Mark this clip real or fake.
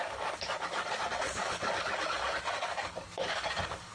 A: fake